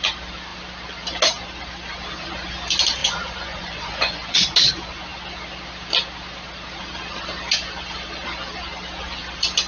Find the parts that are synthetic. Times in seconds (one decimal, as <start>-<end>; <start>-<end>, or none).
3.0-4.4